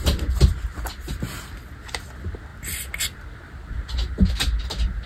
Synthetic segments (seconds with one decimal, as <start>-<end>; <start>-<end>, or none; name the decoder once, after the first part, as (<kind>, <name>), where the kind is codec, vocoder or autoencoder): none